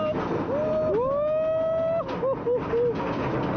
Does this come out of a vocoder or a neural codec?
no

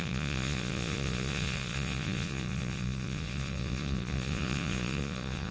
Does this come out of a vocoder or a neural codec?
yes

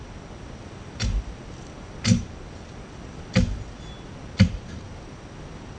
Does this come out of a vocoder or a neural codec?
no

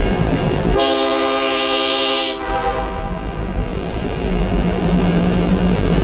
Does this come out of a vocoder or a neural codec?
yes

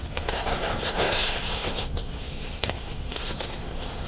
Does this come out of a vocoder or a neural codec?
yes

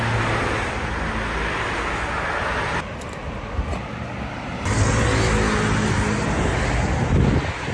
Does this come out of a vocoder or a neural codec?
no